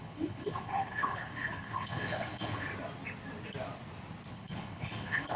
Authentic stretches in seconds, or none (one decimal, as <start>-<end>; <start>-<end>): 2.7-4.3